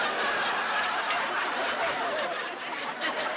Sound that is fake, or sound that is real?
real